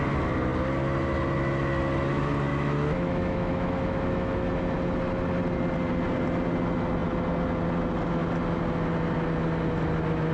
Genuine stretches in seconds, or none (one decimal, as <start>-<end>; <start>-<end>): 0.0-2.5; 4.5-10.3